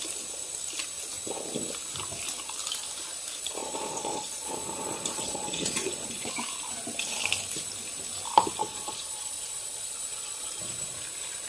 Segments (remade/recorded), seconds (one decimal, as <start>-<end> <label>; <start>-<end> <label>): 0.0-3.6 recorded; 3.6-6.3 remade; 6.3-8.6 recorded; 8.6-10.6 remade; 10.6-11.5 recorded